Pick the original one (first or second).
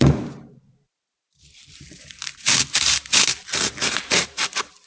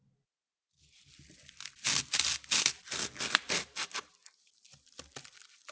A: second